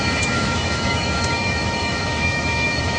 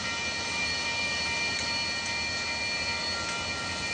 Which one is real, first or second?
second